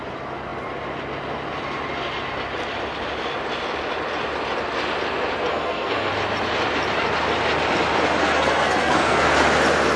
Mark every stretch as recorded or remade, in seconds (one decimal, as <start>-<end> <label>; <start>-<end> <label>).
0.0-5.5 recorded; 5.5-6.1 remade; 6.1-8.2 recorded; 8.2-9.3 remade; 9.3-10.0 recorded